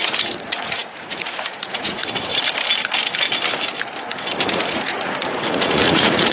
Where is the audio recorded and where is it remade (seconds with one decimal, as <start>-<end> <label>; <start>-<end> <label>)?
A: 0.0-2.3 remade; 2.3-4.5 recorded; 4.5-6.3 remade